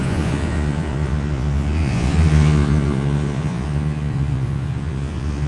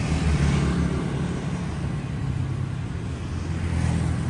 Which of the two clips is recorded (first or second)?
second